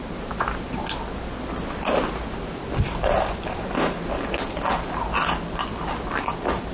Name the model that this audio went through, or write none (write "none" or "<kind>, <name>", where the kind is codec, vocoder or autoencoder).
none